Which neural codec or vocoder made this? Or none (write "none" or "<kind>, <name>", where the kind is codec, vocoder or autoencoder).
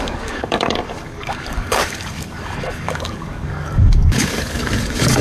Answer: codec, DAC